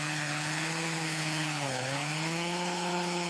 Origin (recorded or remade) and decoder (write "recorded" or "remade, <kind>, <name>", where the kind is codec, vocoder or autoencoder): remade, codec, HILCodec